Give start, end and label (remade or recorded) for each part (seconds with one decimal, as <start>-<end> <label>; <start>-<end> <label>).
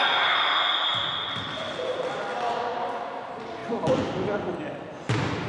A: 0.0-5.5 recorded